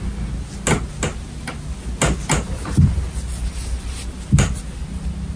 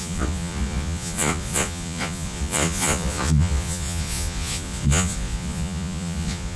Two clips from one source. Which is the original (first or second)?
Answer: first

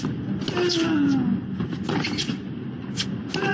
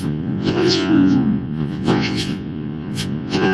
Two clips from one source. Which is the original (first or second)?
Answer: first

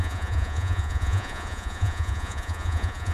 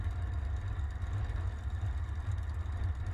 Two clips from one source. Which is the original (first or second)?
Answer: second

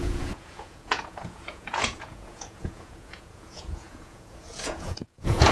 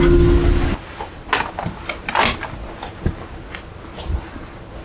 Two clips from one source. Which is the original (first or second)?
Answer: second